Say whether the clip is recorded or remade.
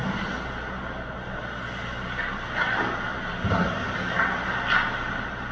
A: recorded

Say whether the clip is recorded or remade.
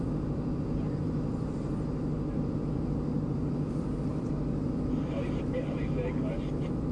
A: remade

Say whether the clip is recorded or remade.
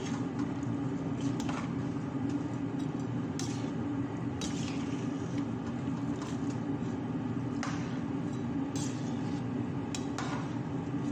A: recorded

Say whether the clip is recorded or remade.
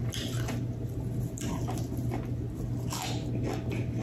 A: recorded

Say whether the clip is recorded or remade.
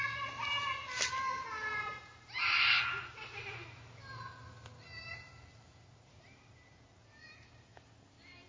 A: recorded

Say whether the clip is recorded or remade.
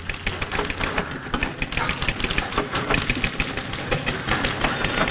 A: recorded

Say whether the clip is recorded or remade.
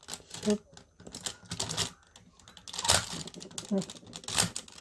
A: recorded